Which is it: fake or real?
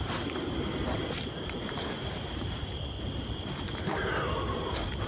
real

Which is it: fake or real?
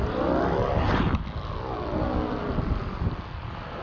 real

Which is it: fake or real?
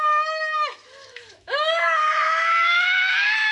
fake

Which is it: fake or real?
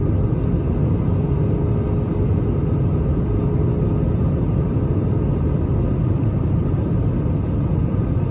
real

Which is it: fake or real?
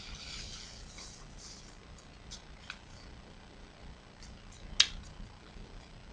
real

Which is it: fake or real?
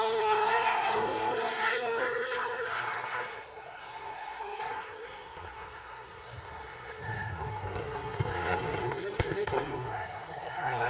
fake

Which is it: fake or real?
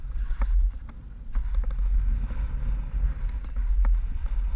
real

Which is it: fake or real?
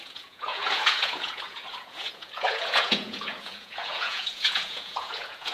fake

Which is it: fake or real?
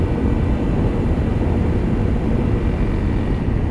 real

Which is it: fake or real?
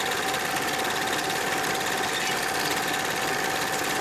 real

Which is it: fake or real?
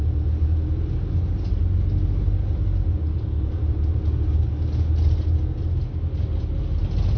real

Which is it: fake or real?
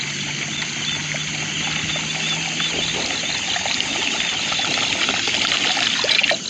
real